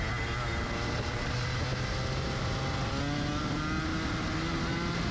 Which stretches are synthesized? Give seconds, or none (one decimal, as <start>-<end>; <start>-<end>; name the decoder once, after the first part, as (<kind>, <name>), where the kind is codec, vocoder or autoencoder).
none